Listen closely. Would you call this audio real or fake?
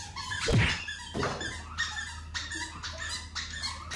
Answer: real